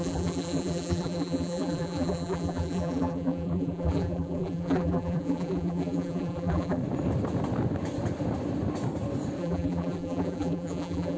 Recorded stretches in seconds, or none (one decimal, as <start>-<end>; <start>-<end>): 6.8-9.4